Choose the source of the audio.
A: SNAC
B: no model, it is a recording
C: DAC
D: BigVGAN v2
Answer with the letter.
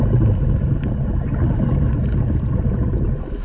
B